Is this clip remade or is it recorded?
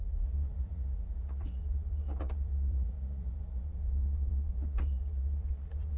remade